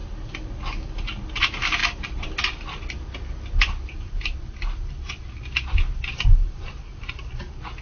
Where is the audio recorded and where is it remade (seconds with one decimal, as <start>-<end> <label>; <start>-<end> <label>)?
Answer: 0.0-7.8 recorded